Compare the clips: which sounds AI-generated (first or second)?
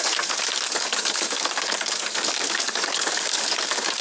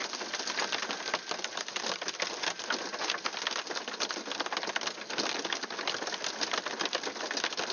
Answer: first